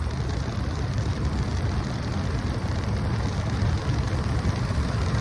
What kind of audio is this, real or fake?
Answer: fake